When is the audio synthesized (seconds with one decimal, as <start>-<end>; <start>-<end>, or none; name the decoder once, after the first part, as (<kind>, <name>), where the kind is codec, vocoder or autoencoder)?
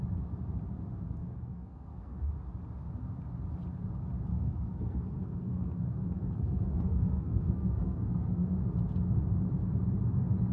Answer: 1.2-2.3 (codec, SNAC); 4.3-8.6